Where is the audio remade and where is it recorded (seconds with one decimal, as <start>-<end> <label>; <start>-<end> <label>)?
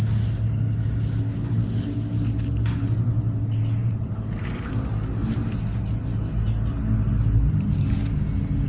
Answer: 0.0-3.8 recorded; 3.8-4.7 remade; 4.7-8.7 recorded